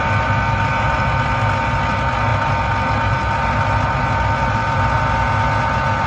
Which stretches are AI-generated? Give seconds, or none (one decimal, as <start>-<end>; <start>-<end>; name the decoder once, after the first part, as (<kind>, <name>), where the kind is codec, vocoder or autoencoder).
none